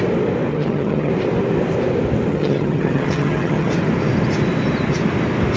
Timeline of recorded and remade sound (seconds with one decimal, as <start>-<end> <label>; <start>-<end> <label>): 0.0-0.5 recorded; 0.5-1.1 remade; 1.1-2.3 recorded; 2.3-3.7 remade; 3.7-5.6 recorded